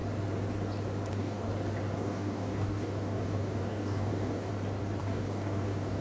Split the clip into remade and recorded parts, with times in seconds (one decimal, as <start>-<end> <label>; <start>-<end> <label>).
0.0-1.1 recorded; 1.1-1.5 remade; 1.5-2.0 recorded; 2.0-4.5 remade; 4.5-5.0 recorded; 5.0-6.0 remade